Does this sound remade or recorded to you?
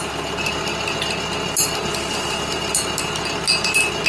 recorded